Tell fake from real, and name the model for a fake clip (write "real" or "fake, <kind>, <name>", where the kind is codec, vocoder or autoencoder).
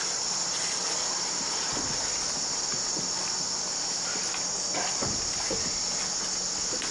real